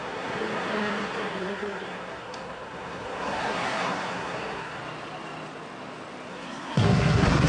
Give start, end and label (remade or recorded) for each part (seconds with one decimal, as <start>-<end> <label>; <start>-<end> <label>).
0.0-4.8 remade; 4.8-6.3 recorded; 6.3-7.5 remade